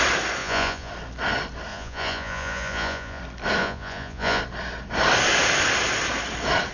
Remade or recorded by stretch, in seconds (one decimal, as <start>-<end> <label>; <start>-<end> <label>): 0.0-0.4 recorded; 0.4-0.9 remade; 0.9-1.7 recorded; 1.7-3.2 remade; 3.2-3.6 recorded; 3.6-4.4 remade; 4.4-6.7 recorded